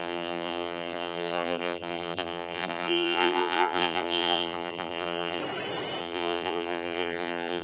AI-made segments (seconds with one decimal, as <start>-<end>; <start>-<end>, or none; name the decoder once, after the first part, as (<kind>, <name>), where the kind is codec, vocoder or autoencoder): 0.0-5.4 (vocoder, BigVGAN v2); 6.0-7.6